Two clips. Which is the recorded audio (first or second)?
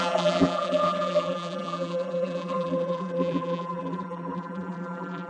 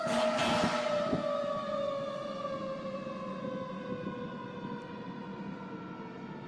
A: second